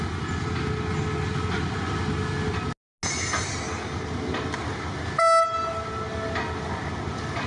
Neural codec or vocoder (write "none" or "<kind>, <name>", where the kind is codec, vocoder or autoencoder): none